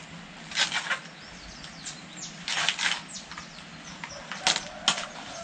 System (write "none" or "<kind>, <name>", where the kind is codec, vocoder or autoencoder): none